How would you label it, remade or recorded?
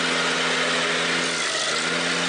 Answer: recorded